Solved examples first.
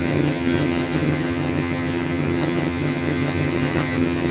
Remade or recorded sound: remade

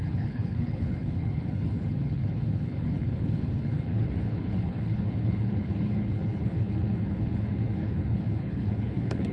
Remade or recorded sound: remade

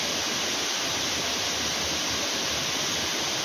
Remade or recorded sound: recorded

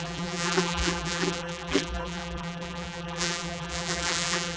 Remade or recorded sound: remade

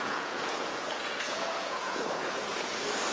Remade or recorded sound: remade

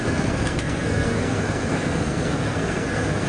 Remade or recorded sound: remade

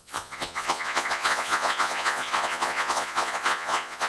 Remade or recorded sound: remade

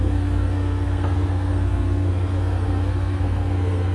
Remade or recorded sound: remade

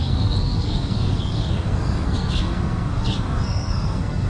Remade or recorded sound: remade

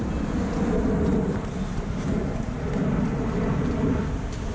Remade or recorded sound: recorded